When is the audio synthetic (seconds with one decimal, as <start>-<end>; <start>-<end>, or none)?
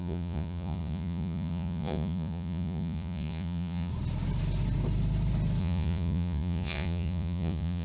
0.0-3.9; 5.6-7.8